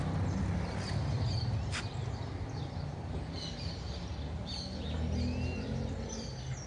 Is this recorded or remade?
recorded